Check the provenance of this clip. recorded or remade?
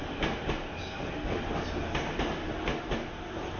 recorded